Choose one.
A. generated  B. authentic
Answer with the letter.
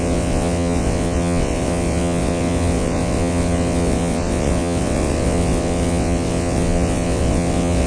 A